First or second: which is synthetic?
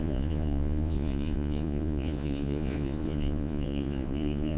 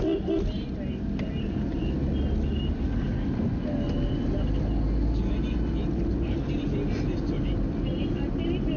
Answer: first